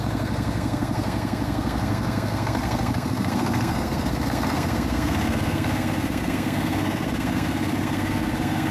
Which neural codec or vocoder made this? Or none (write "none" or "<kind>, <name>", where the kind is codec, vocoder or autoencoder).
codec, SNAC